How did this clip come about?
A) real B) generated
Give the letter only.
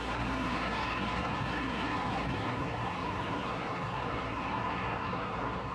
B